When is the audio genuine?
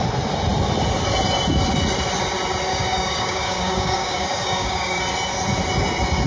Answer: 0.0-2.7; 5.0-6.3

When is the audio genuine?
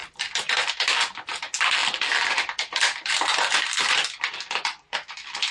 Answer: 0.0-1.8; 5.1-5.5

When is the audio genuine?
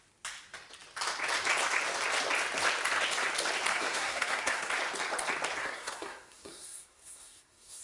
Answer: 0.0-3.7; 4.7-5.6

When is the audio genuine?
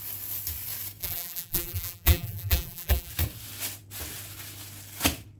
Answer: 0.0-1.0; 3.1-5.4